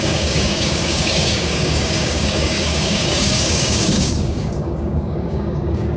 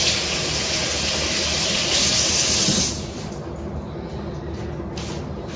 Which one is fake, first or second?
first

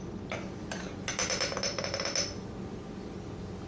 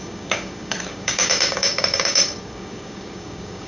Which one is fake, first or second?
second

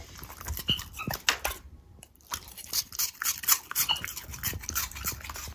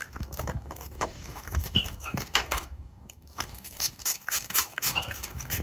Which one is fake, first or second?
second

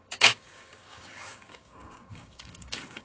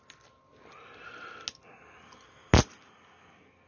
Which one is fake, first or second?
first